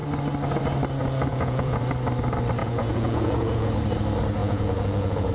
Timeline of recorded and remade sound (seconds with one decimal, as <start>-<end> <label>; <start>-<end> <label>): 0.0-1.3 recorded; 1.3-1.8 remade; 1.8-2.6 recorded; 2.6-3.7 remade; 3.7-4.4 recorded; 4.4-5.3 remade